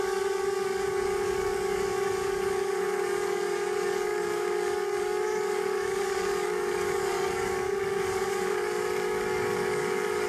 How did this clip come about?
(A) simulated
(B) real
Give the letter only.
A